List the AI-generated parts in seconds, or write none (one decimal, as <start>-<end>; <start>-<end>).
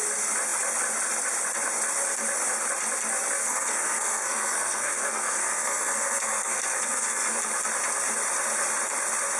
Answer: 3.4-7.4